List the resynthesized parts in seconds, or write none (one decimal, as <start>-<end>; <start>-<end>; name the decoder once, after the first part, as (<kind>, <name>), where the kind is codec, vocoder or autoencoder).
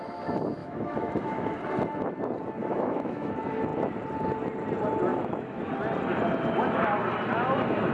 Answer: 0.6-1.6 (autoencoder, DAC-VAE); 2.6-3.3; 5.1-5.7